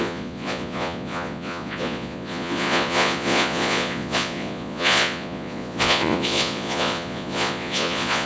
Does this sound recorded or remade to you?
remade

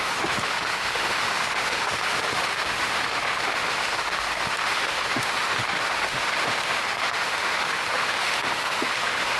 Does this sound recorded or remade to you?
remade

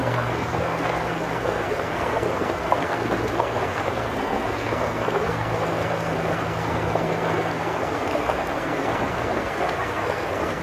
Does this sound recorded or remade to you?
remade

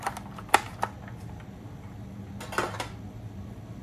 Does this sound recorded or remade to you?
recorded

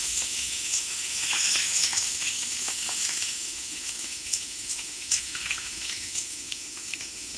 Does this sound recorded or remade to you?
remade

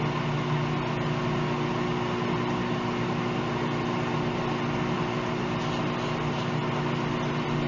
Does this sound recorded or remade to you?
recorded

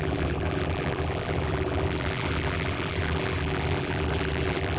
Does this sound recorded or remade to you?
remade